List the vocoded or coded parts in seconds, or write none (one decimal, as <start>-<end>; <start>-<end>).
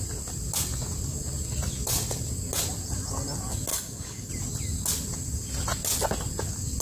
3.7-4.3